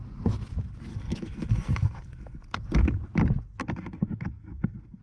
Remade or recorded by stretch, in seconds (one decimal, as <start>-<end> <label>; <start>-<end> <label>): 0.0-0.9 recorded; 0.9-2.4 remade; 2.4-3.6 recorded; 3.6-5.0 remade